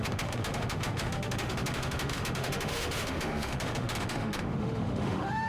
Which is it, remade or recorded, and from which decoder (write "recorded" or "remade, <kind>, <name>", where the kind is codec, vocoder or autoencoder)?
remade, autoencoder, DAC-VAE